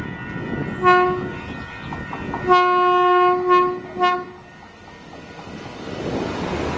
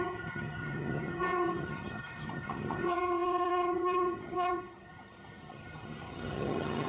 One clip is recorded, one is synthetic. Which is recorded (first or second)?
first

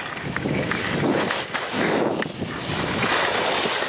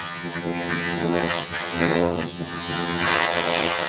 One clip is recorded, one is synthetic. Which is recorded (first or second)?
first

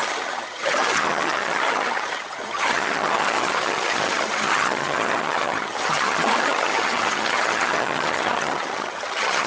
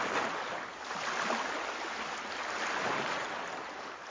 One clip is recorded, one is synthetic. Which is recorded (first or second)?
second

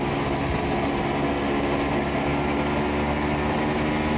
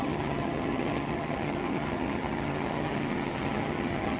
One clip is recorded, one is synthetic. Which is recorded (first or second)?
first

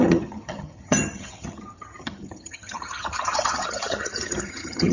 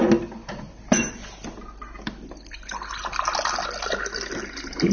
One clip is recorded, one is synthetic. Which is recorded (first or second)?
second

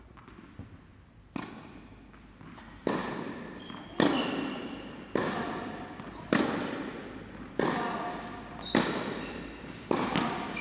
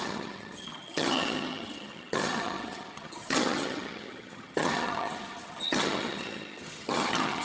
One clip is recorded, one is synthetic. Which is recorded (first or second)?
first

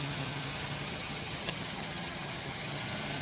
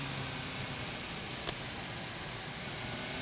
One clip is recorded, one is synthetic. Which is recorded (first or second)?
second